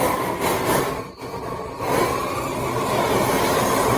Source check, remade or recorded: recorded